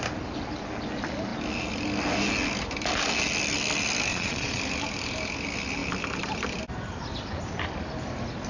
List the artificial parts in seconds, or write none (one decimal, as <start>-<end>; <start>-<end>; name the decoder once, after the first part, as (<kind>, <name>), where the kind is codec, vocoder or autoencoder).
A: 4.1-4.6 (vocoder, Vocos)